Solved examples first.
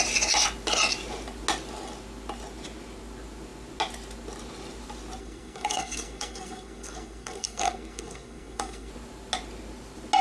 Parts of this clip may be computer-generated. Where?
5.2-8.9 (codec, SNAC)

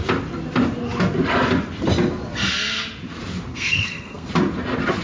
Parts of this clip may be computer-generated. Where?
3.5-4.3 (codec, SNAC)

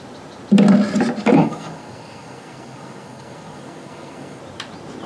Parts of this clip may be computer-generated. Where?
1.3-4.4 (codec, SNAC)